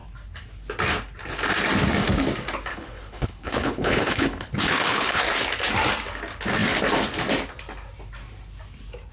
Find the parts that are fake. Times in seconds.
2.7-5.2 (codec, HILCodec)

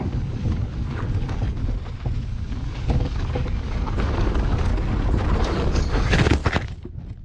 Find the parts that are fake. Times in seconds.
0.0-1.6 (codec, DAC); 2.2-4.7; 5.4-6.4

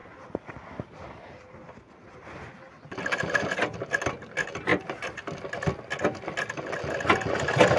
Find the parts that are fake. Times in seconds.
4.7-5.5 (vocoder, BigVGAN v2)

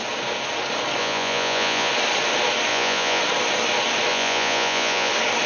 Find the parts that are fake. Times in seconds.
1.0-1.9 (vocoder, Vocos); 2.7-3.2; 4.1-5.1

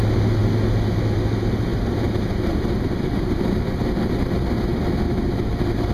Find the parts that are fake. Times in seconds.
1.7-3.7 (vocoder, BigVGAN v2)

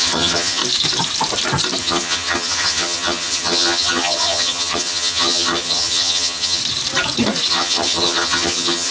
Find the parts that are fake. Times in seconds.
0.0-0.6 (vocoder, HiFi-GAN); 1.8-6.6; 7.5-8.9